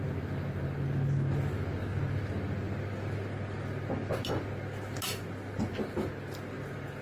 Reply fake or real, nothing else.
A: real